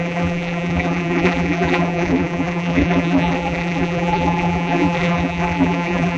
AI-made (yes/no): yes